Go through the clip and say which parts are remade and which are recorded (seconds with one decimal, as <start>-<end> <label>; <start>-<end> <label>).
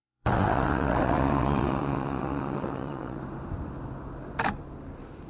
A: 0.0-3.2 remade; 3.2-5.3 recorded